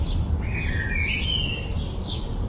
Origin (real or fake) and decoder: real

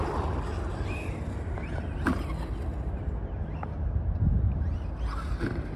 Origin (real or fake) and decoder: real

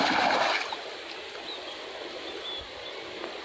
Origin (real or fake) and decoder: real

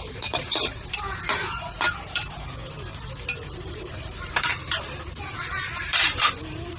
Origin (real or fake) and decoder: fake, vocoder, BigVGAN v2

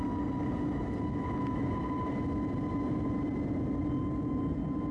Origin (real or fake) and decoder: real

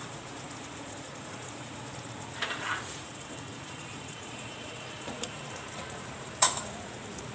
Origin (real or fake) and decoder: fake, vocoder, Vocos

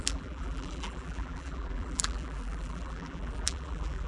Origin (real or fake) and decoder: fake, vocoder, BigVGAN v2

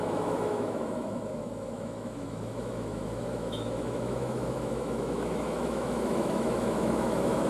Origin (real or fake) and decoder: fake, autoencoder, DAC-VAE